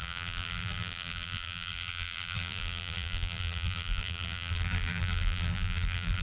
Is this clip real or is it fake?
fake